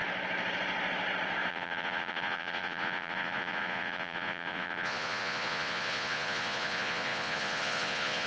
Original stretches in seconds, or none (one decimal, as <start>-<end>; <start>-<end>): 0.0-1.5